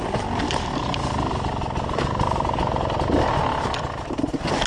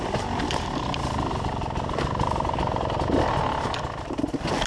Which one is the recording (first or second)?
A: first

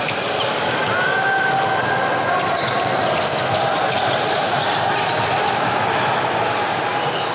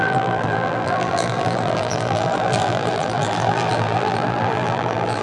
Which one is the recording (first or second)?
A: first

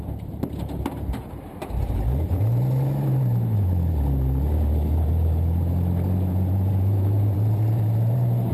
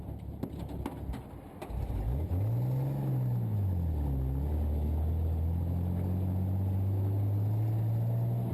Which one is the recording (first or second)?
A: second